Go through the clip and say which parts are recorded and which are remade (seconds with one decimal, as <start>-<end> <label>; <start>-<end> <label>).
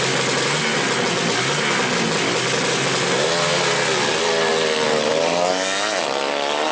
0.0-6.7 recorded